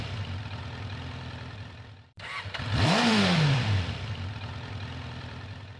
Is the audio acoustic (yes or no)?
no